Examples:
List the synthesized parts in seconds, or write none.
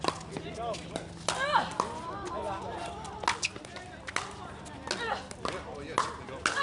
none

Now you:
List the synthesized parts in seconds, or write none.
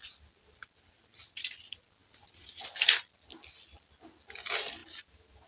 2.0-2.6; 4.8-5.5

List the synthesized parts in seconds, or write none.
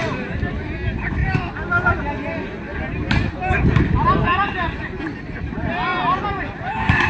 0.0-1.2; 5.0-7.1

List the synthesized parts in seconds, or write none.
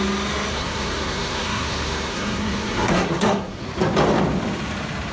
0.5-3.6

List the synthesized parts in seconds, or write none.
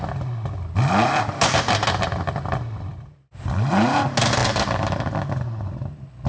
2.9-3.7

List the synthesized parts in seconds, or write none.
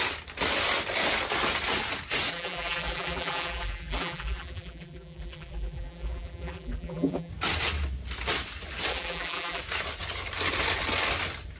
2.3-7.3; 8.9-9.6